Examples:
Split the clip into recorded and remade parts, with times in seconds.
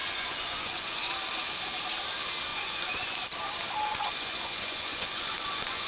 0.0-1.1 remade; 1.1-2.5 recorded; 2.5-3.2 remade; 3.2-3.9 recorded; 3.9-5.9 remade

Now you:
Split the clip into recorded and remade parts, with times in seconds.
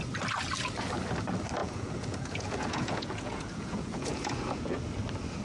0.0-1.6 recorded; 1.6-4.8 remade; 4.8-5.4 recorded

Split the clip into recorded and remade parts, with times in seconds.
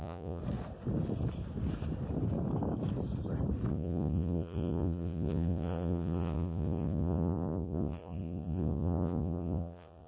0.0-0.4 remade; 0.4-3.7 recorded; 3.7-10.1 remade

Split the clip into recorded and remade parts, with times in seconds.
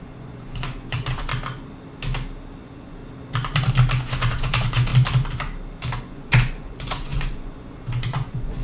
0.0-1.3 remade; 1.3-2.6 recorded; 2.6-3.0 remade; 3.0-4.0 recorded; 4.0-4.9 remade; 4.9-6.0 recorded; 6.0-8.6 remade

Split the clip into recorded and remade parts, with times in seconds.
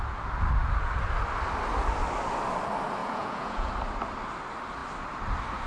0.0-3.0 recorded; 3.0-3.7 remade; 3.7-5.7 recorded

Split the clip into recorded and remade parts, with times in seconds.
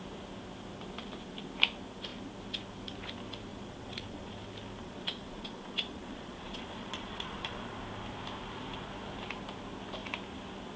0.0-3.5 recorded; 3.5-4.3 remade; 4.3-4.8 recorded; 4.8-7.7 remade; 7.7-10.8 recorded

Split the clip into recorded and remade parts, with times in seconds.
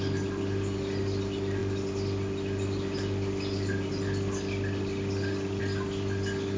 0.0-6.6 recorded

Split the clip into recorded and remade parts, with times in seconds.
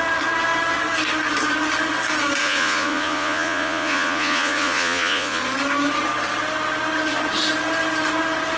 0.0-2.4 recorded; 2.4-5.4 remade; 5.4-8.6 recorded